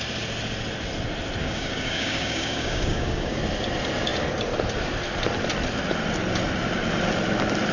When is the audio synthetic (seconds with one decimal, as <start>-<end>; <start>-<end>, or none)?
1.4-3.4

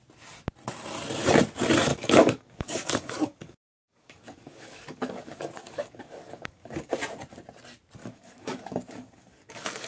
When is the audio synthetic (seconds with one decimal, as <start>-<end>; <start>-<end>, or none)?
1.9-6.9; 8.0-9.9

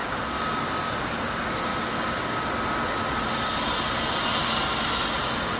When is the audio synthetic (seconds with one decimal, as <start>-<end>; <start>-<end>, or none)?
0.0-0.6; 1.7-2.5